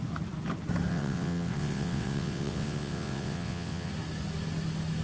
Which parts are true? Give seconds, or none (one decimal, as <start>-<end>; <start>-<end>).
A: 0.0-0.9; 3.9-5.0